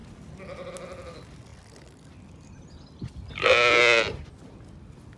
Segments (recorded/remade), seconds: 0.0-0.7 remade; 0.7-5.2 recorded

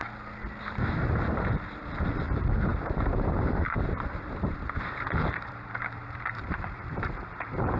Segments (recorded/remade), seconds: 0.0-0.6 recorded; 0.6-7.8 remade